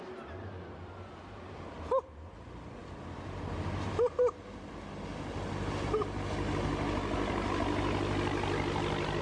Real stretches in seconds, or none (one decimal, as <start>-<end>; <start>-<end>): 0.0-9.2